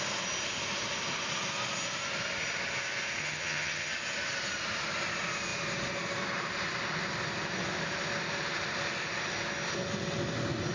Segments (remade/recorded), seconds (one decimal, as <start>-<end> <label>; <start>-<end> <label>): 0.0-3.2 recorded; 3.2-3.9 remade; 3.9-10.7 recorded